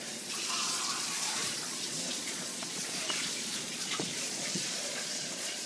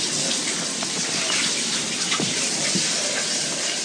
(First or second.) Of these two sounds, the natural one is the second